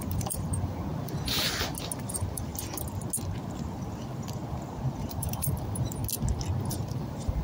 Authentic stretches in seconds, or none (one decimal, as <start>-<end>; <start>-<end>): 0.9-2.0; 2.5-5.1; 6.0-6.7